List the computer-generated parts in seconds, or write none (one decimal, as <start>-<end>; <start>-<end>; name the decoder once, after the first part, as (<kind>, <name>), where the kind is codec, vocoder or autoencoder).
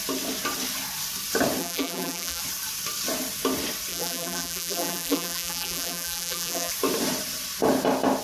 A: 1.6-2.4 (vocoder, BigVGAN v2); 3.9-6.7